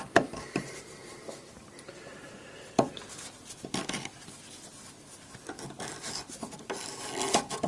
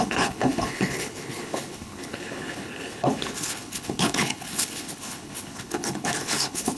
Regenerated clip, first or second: second